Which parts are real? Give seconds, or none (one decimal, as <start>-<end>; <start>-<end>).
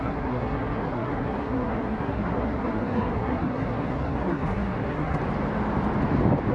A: 5.2-6.5